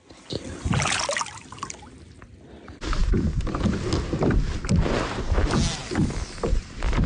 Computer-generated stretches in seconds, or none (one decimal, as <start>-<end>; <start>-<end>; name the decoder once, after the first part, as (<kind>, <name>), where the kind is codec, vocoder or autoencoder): none